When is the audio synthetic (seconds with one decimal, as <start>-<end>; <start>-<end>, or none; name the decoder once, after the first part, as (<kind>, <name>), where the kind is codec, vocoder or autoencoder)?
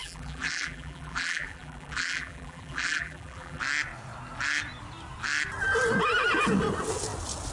0.0-3.6 (vocoder, BigVGAN v2)